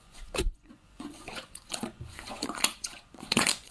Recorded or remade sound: remade